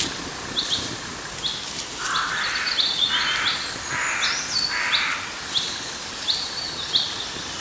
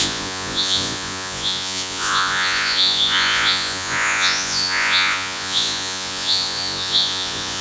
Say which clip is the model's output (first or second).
second